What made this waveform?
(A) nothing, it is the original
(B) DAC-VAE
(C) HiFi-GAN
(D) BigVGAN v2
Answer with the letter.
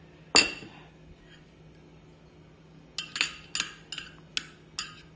A